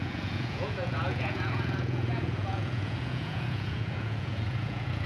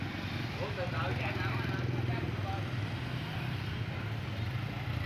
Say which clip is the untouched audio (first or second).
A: second